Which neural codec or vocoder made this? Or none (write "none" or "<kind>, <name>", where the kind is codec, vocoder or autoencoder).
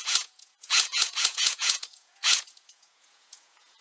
vocoder, Vocos